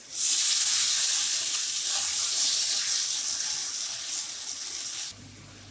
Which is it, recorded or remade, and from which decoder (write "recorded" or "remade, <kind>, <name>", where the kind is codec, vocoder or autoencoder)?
recorded